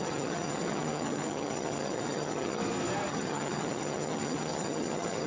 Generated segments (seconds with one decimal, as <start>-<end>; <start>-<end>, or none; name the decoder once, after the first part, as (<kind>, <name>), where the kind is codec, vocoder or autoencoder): 0.0-2.6 (vocoder, HiFi-GAN); 3.1-5.3